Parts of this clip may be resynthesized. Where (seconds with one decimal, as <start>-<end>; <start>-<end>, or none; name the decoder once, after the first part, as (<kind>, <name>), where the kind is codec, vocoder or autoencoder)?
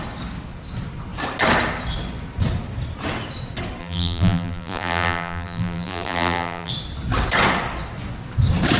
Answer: 3.8-6.7 (vocoder, BigVGAN v2)